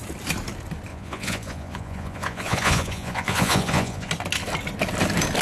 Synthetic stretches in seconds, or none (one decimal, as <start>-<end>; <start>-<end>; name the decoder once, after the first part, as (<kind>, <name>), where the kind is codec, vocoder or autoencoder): 0.9-4.1 (vocoder, Vocos)